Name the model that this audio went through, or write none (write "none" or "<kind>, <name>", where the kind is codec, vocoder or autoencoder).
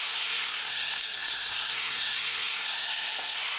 codec, SNAC